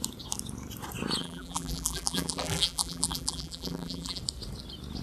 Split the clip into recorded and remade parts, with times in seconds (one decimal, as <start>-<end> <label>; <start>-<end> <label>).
0.0-1.2 recorded; 1.2-4.2 remade; 4.2-5.0 recorded